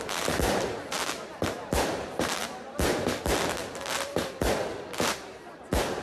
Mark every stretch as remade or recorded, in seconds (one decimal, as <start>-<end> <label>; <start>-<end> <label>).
0.0-1.0 recorded; 1.0-3.2 remade; 3.2-3.6 recorded; 3.6-6.0 remade